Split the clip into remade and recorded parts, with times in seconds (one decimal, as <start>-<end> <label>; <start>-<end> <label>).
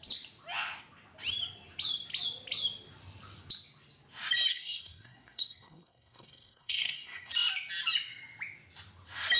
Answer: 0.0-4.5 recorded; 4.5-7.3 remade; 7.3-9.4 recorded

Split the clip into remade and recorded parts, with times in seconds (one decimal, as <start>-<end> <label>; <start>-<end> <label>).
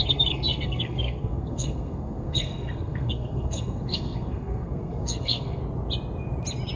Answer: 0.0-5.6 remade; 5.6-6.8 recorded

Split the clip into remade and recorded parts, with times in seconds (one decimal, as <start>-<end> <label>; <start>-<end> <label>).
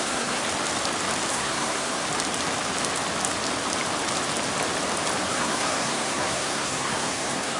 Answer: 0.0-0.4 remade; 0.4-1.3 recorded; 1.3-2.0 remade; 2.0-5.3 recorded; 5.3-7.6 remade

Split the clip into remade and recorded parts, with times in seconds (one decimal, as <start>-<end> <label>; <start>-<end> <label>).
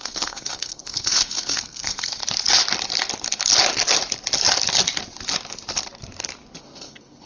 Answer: 0.0-2.2 remade; 2.2-6.6 recorded; 6.6-7.3 remade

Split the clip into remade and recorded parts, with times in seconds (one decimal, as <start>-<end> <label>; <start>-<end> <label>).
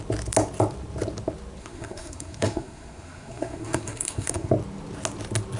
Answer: 0.0-1.6 recorded; 1.6-4.5 remade; 4.5-5.6 recorded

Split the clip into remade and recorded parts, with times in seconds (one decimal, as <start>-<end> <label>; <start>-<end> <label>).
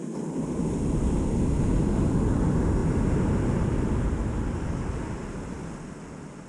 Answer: 0.0-6.5 recorded